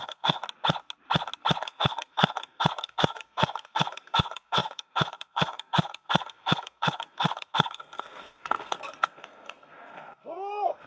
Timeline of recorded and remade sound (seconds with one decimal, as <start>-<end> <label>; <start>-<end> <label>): 0.0-0.4 remade; 0.4-1.6 recorded; 1.6-10.9 remade